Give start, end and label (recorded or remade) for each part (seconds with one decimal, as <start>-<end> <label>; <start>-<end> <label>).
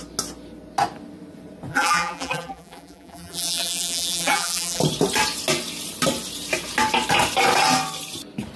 0.0-1.7 recorded; 1.7-4.8 remade; 4.8-8.6 recorded